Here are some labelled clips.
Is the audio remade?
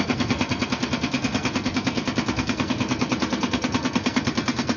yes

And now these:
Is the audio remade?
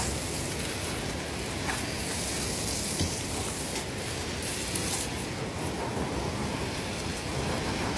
no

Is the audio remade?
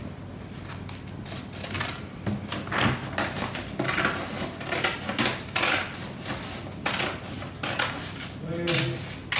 no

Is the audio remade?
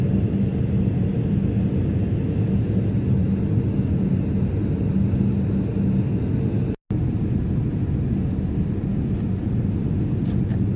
no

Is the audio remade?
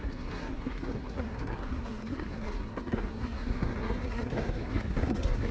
yes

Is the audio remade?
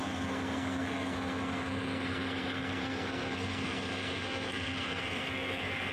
yes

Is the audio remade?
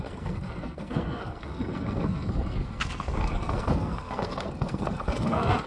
yes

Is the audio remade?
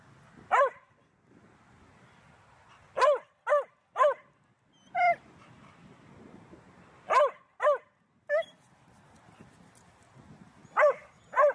no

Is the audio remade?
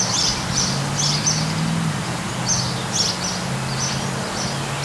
no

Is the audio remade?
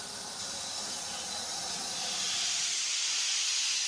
yes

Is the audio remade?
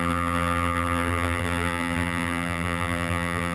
yes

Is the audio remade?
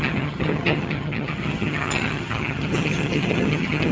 yes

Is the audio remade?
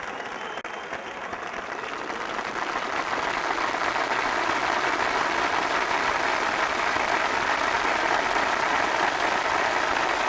no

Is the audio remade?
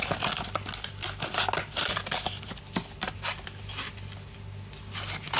no